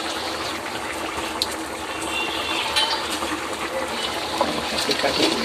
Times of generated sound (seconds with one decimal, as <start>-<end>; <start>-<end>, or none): none